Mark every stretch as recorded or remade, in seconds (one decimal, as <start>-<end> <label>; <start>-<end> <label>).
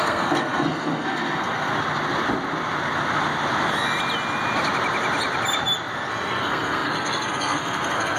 0.0-1.7 remade; 1.7-6.1 recorded; 6.1-8.2 remade